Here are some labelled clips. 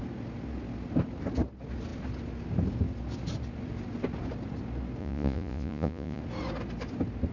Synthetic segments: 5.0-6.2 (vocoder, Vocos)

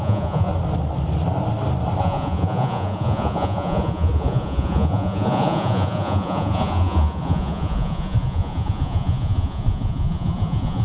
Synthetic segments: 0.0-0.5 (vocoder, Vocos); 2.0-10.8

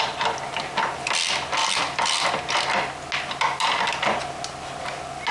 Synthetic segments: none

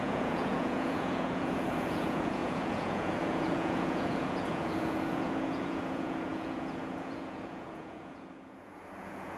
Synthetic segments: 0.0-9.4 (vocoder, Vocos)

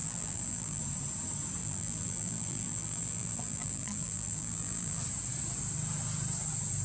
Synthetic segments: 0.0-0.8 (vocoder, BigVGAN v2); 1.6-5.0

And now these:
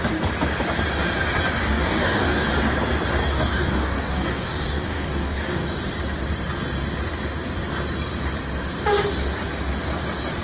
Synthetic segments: 1.6-2.5 (codec, DAC); 3.2-5.7

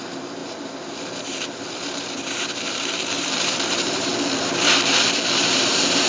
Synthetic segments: 0.0-4.1 (vocoder, BigVGAN v2); 5.5-6.1

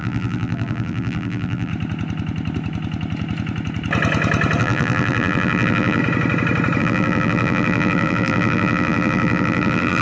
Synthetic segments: 0.0-1.7 (vocoder, BigVGAN v2); 4.6-6.0; 6.8-10.0